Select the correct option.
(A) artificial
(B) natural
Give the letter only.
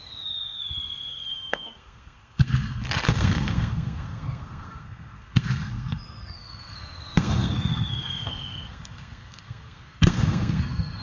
A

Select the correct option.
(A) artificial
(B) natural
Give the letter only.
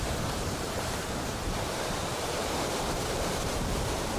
A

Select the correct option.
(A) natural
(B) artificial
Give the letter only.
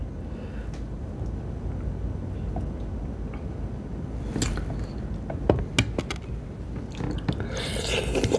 A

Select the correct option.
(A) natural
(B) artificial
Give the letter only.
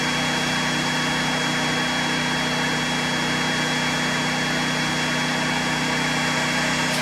A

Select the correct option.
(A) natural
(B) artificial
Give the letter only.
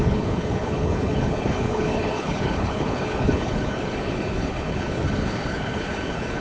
B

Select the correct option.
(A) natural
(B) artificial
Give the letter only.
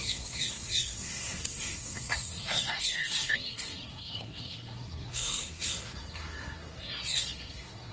B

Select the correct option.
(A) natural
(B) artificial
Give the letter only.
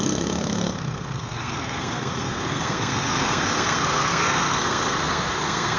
B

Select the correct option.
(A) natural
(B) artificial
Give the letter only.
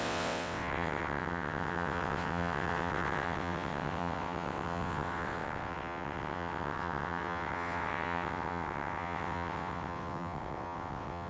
B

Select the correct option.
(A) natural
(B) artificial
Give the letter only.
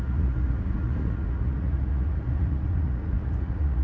B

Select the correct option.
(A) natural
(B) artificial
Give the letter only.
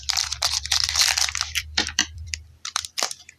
B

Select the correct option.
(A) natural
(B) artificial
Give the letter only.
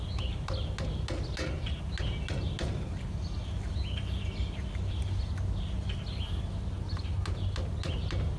A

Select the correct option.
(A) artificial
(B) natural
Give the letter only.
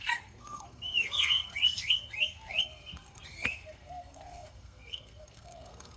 A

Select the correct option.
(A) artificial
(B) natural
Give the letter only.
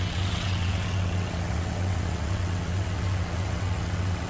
A